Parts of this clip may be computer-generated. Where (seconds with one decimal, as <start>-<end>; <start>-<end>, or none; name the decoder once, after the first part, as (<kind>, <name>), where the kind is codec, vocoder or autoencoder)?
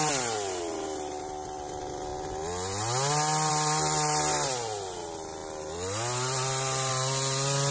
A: none